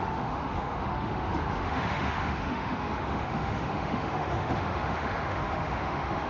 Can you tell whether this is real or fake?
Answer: fake